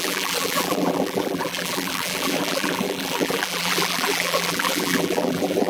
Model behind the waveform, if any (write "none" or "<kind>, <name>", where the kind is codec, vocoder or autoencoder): vocoder, BigVGAN v2